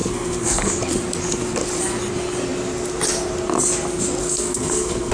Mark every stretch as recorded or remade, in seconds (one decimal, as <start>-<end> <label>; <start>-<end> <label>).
0.0-0.7 remade; 0.7-4.2 recorded; 4.2-5.1 remade